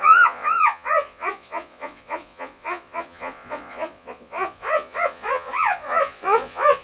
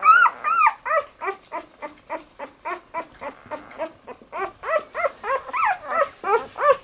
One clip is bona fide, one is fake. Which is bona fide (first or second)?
second